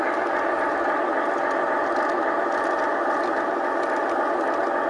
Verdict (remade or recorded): recorded